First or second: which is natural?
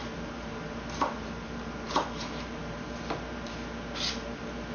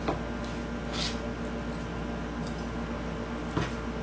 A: second